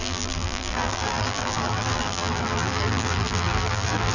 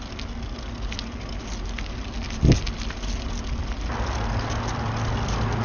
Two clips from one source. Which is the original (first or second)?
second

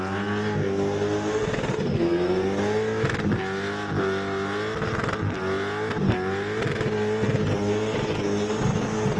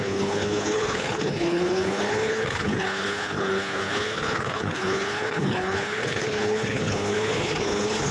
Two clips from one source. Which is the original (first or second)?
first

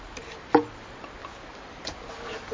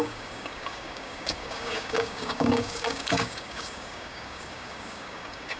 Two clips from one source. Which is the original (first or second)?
first